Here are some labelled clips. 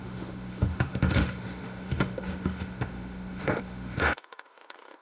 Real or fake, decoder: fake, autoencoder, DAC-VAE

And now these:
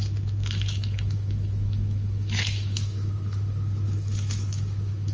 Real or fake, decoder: fake, autoencoder, DAC-VAE